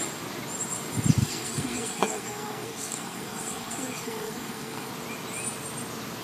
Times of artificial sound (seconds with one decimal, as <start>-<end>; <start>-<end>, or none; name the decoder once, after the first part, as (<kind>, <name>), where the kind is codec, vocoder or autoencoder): 1.2-4.9 (codec, SNAC)